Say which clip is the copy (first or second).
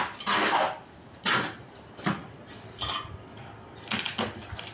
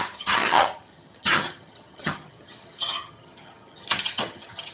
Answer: second